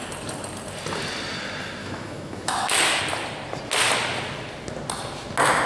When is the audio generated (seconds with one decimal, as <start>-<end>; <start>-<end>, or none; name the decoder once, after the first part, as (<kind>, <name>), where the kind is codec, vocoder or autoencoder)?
1.8-3.0 (autoencoder, DAC-VAE)